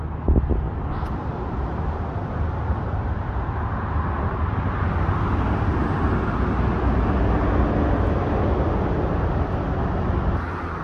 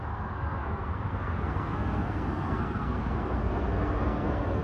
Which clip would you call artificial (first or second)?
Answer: second